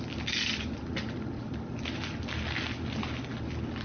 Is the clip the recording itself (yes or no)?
yes